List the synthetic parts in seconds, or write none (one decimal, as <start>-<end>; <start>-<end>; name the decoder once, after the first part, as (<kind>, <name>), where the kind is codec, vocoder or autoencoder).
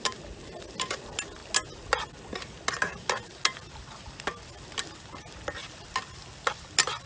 none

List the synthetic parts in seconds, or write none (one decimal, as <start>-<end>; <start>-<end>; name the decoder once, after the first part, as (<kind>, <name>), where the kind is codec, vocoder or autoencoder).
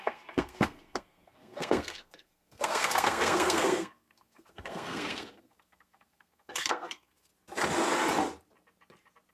0.0-7.3 (codec, SNAC)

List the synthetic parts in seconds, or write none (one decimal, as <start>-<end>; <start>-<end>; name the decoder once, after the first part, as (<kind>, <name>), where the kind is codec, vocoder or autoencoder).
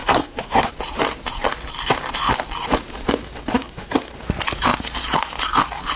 0.0-0.7 (codec, SNAC); 3.5-4.1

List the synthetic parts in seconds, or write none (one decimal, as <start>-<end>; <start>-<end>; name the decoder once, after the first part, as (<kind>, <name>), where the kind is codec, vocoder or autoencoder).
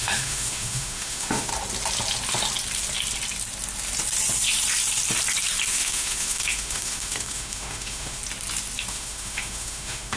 0.0-1.5 (autoencoder, DAC-VAE); 5.7-8.2; 8.9-10.2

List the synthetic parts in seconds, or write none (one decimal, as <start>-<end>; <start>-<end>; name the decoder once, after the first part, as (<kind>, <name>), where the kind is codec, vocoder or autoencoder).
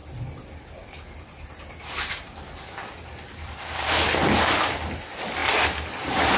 none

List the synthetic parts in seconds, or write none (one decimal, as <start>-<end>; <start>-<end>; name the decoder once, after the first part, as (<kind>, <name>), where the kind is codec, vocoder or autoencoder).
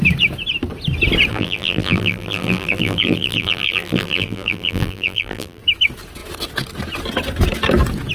1.3-5.6 (vocoder, BigVGAN v2)